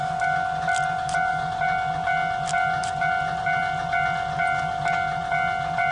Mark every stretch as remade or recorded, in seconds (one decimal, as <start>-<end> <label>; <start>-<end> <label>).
0.0-5.9 recorded